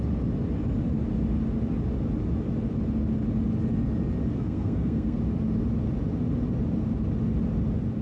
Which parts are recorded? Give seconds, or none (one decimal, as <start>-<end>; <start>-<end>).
0.0-4.3; 5.2-8.0